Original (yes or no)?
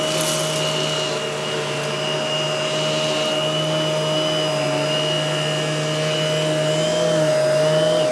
yes